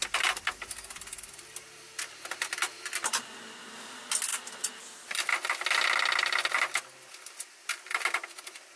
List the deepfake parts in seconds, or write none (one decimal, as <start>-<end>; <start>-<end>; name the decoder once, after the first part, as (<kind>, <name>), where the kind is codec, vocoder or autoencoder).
none